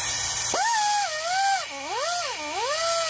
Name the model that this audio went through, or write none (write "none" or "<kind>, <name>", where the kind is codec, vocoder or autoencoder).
none